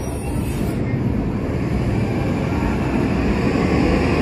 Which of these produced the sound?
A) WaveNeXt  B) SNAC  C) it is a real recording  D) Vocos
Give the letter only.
C